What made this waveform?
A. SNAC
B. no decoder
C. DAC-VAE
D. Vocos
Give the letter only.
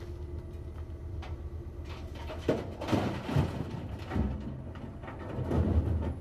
B